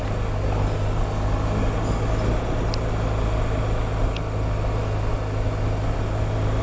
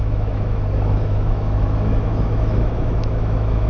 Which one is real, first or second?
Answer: first